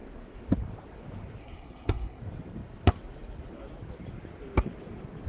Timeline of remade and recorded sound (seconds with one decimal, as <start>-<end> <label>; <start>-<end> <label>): 0.0-1.4 recorded; 1.4-2.2 remade; 2.2-5.3 recorded